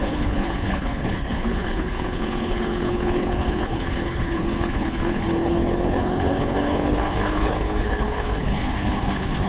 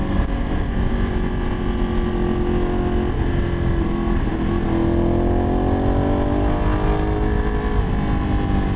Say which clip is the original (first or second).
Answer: second